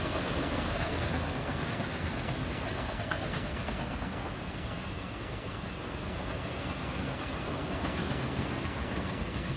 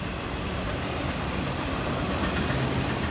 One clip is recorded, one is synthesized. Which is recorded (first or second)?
second